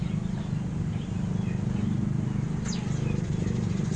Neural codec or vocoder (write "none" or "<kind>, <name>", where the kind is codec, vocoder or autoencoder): none